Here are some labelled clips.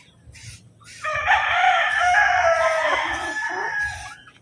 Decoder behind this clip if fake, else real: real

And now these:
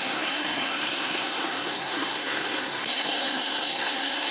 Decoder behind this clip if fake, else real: fake, codec, SNAC